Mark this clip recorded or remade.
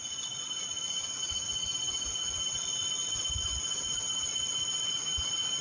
recorded